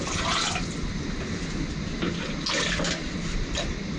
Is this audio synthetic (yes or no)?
no